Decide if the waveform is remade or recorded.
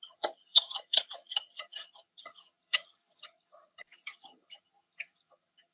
remade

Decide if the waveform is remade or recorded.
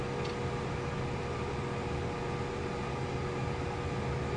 recorded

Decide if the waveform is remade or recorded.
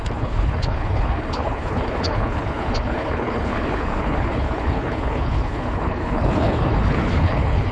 remade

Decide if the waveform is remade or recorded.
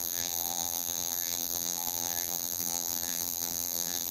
remade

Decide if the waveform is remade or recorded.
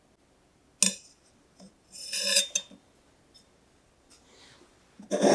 recorded